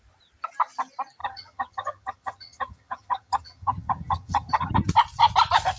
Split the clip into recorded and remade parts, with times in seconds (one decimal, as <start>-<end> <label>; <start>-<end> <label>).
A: 0.0-1.2 recorded; 1.2-4.7 remade; 4.7-5.8 recorded